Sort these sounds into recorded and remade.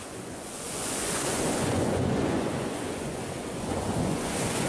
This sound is remade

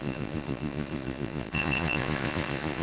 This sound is remade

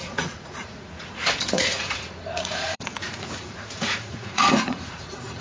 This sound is remade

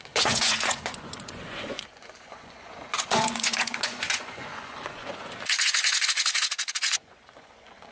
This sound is remade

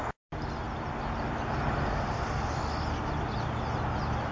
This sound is recorded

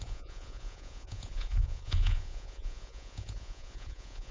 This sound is remade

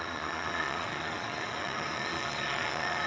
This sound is remade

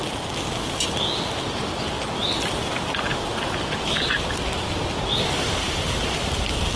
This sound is recorded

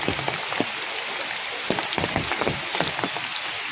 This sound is recorded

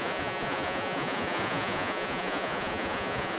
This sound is remade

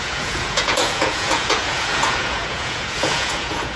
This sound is remade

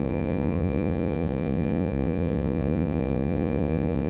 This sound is remade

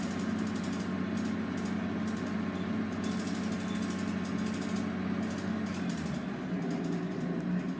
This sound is recorded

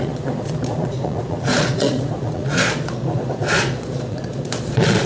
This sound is remade